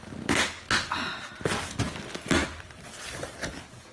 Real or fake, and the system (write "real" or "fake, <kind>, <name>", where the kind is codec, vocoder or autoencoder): real